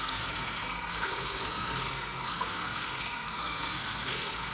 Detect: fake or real fake